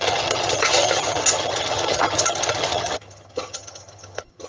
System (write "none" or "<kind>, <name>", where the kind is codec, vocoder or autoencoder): vocoder, HiFi-GAN